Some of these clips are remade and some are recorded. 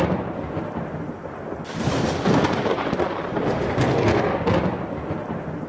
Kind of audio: recorded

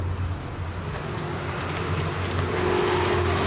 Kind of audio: recorded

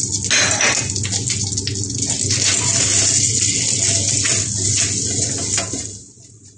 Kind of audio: recorded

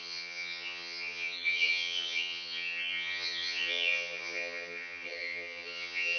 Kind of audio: remade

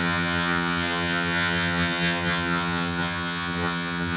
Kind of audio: remade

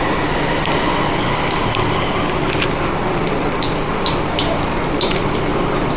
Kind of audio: recorded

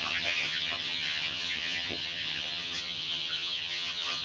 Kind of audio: remade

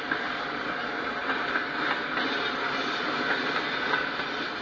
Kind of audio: recorded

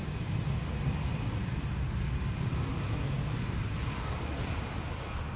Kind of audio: recorded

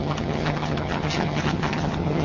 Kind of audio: remade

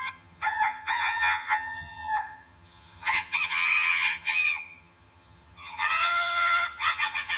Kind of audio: remade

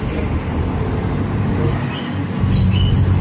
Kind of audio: recorded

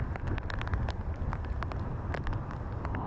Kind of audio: recorded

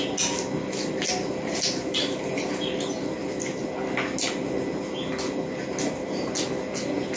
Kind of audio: recorded